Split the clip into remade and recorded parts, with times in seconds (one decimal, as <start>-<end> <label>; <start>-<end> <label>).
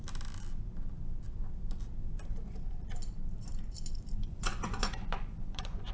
0.0-4.2 recorded; 4.2-5.9 remade